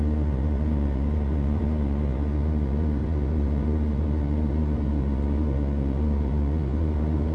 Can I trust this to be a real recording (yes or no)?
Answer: no